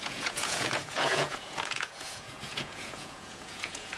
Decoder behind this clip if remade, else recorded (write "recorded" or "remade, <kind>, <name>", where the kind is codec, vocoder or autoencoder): remade, vocoder, Vocos